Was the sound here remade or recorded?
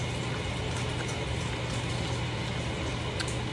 recorded